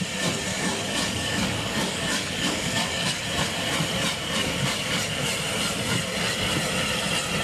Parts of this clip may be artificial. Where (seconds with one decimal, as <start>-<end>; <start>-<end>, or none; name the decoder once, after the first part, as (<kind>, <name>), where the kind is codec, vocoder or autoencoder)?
0.5-3.2 (codec, DAC); 4.4-5.0